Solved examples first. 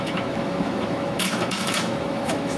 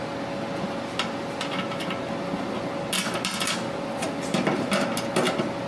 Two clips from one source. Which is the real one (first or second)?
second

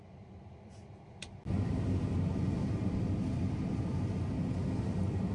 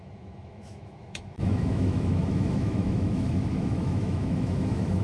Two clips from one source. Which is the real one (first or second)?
first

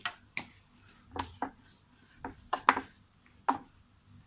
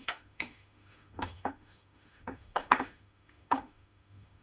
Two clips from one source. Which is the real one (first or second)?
first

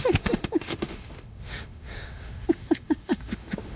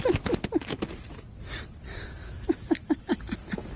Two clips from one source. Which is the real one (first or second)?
second